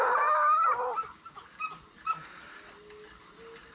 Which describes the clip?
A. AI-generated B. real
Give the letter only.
B